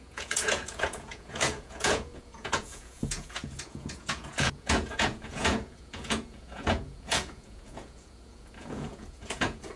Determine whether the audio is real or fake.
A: fake